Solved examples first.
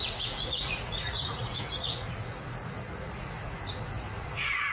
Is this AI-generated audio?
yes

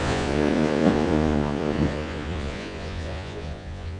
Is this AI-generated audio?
yes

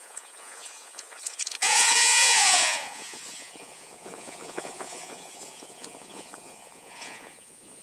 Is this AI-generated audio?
yes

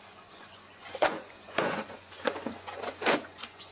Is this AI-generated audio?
yes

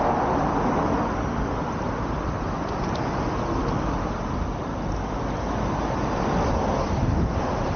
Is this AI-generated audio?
no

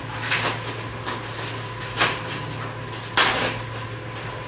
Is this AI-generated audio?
no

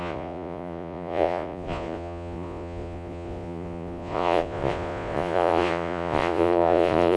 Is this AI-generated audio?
yes